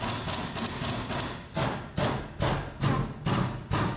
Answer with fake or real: real